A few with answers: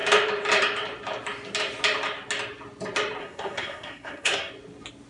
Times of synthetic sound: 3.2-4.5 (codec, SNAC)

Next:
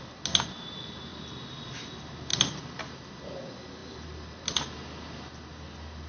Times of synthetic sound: none

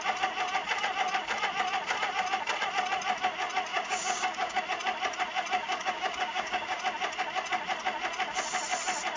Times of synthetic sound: 3.7-4.6 (codec, DAC); 5.6-6.8

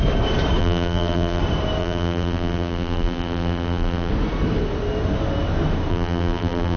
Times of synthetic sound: 0.6-1.4 (vocoder, BigVGAN v2); 1.8-4.1; 5.9-6.8

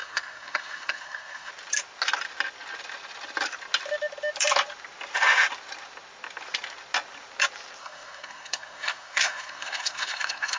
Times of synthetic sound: 0.0-1.5 (codec, SNAC); 7.8-10.6

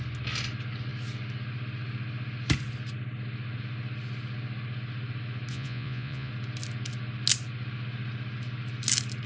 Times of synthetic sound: 5.5-6.3 (vocoder, Vocos)

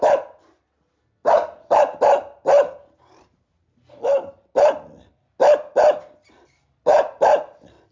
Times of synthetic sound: none